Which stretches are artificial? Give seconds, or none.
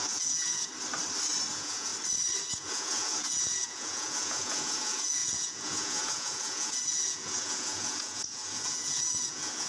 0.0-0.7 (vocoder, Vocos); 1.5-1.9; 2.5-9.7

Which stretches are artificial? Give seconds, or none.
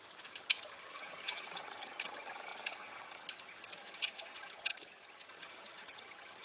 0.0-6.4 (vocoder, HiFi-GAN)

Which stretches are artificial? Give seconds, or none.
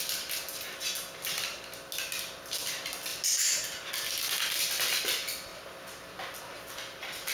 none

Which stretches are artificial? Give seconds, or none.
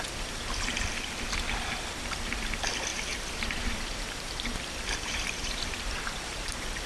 2.9-6.9 (vocoder, BigVGAN v2)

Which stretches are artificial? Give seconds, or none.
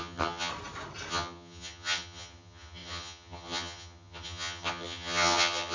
0.0-0.5 (vocoder, HiFi-GAN); 1.1-5.7